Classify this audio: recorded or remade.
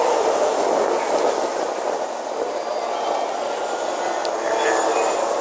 recorded